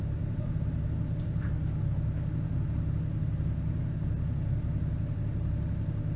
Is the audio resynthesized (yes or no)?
no